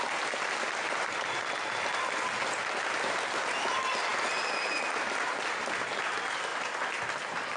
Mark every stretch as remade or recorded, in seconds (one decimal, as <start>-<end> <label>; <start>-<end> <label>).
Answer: 0.0-6.5 recorded; 6.5-7.6 remade